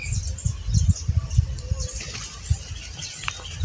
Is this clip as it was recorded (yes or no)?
yes